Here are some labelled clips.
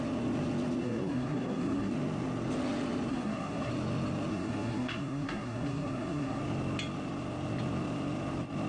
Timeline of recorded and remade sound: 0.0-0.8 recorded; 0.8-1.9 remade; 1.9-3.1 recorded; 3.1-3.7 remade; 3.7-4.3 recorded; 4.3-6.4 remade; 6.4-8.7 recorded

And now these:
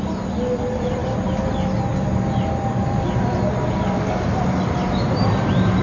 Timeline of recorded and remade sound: 0.0-5.8 recorded